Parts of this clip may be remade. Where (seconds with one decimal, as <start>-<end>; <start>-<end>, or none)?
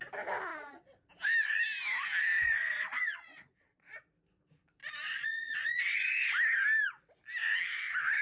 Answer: 0.5-1.1; 2.2-4.0; 4.8-6.3